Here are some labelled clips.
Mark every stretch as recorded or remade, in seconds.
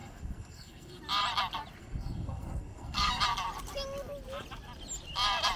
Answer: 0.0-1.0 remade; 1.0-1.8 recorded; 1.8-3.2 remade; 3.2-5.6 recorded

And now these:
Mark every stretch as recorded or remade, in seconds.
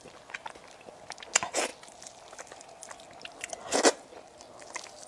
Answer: 0.0-5.1 recorded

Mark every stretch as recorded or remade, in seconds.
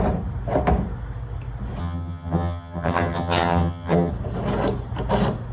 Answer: 0.0-1.8 recorded; 1.8-4.1 remade; 4.1-5.5 recorded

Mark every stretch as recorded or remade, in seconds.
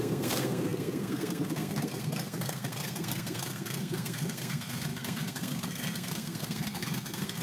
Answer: 0.0-7.4 remade